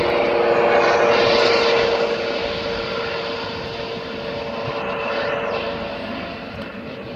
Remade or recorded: recorded